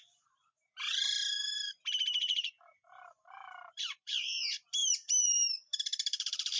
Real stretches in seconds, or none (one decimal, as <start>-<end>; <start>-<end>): none

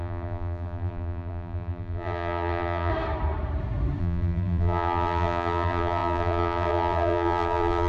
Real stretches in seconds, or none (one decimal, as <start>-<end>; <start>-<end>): 2.9-4.0

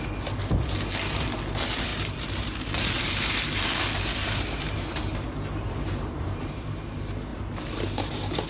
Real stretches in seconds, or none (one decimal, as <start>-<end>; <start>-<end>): 0.0-1.9; 3.6-4.2; 6.7-8.5

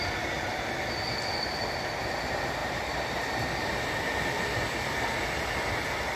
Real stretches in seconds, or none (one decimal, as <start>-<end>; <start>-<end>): 0.0-2.6; 3.9-6.2

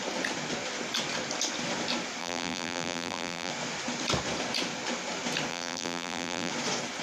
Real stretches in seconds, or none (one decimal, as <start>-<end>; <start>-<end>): 0.0-2.2; 3.5-5.5; 6.5-7.0

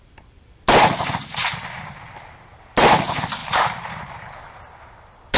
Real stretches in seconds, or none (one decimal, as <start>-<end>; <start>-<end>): 0.0-3.4; 4.4-5.4